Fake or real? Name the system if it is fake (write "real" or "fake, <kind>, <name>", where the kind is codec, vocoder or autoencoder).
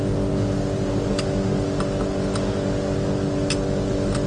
real